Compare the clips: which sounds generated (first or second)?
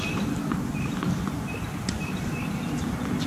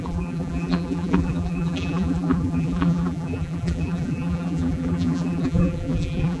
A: second